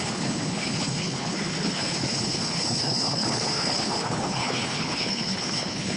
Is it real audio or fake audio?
fake